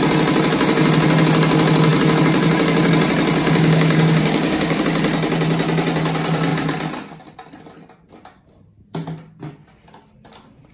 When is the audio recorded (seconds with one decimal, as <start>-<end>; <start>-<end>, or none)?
0.0-3.4; 4.8-10.7